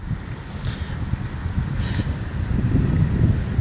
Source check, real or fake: real